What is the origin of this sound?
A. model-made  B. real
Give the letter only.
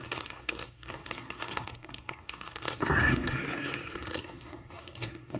A